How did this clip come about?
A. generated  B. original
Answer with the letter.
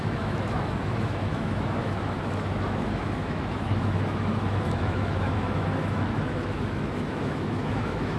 A